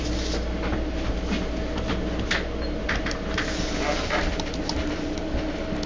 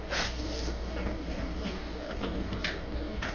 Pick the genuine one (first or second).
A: first